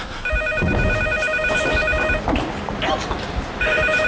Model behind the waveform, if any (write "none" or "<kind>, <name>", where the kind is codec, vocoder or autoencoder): none